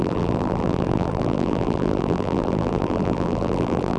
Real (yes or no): no